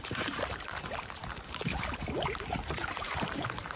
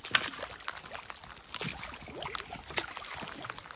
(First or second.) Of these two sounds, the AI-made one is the first